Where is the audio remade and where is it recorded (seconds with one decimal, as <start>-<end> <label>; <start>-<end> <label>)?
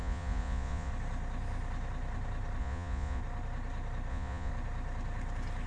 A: 0.0-0.9 remade; 0.9-2.6 recorded; 2.6-3.2 remade; 3.2-4.1 recorded; 4.1-4.5 remade; 4.5-5.7 recorded